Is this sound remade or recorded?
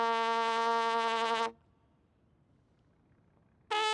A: recorded